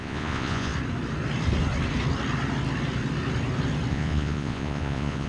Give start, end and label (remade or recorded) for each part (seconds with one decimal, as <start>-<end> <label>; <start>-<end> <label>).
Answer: 0.0-0.7 remade; 0.7-3.9 recorded; 3.9-5.3 remade